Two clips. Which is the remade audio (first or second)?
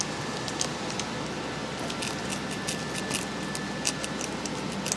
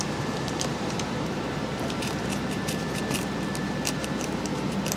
second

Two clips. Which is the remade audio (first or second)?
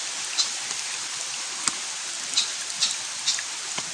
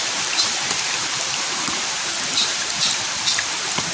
second